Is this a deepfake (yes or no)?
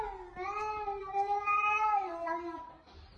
no